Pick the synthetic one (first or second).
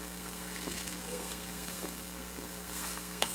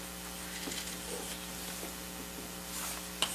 first